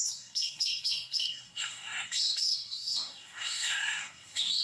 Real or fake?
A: fake